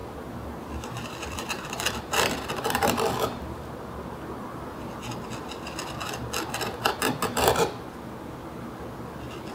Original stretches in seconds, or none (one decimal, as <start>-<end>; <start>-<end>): 3.8-9.5